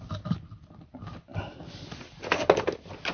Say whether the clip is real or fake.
real